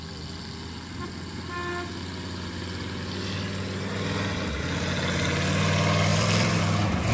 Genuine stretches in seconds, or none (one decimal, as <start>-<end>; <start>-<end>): 0.0-6.1; 6.6-7.1